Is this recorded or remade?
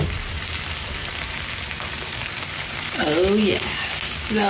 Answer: recorded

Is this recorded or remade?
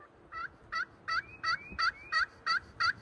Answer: recorded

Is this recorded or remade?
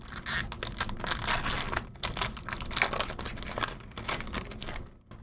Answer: recorded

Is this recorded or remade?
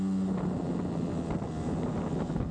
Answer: recorded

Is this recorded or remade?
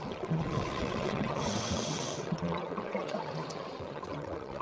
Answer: remade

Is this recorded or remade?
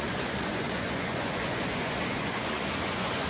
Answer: remade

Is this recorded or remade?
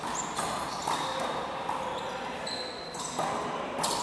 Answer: recorded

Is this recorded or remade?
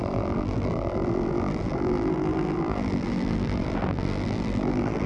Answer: remade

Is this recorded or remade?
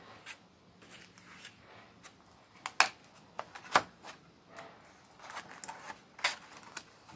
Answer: recorded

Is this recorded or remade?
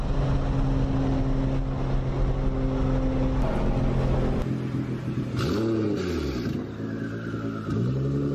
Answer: recorded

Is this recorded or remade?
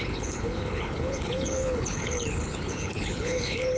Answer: remade